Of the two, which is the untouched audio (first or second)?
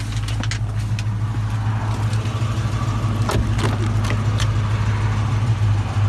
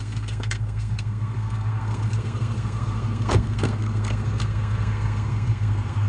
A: first